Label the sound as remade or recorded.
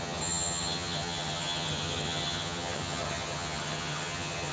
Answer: remade